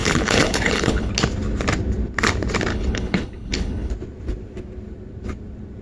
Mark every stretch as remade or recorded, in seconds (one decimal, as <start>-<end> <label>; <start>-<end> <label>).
0.0-1.1 remade; 1.1-2.7 recorded; 2.7-3.9 remade; 3.9-5.8 recorded

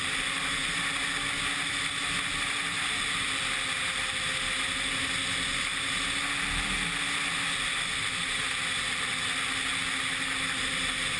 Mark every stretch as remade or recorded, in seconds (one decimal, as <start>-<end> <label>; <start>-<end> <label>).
0.0-11.2 recorded

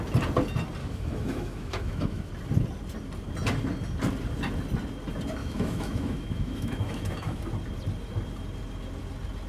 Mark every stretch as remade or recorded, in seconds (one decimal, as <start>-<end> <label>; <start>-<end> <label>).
0.0-0.8 recorded; 0.8-2.3 remade; 2.3-5.4 recorded; 5.4-7.4 remade; 7.4-9.5 recorded

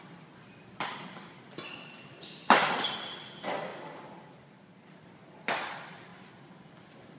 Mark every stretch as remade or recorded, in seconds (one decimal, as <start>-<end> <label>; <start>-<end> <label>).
0.0-3.7 recorded; 3.7-4.6 remade; 4.6-6.1 recorded; 6.1-6.6 remade; 6.6-7.2 recorded